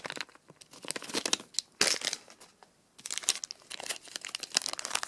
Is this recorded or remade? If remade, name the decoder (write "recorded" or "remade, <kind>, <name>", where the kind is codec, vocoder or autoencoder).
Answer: recorded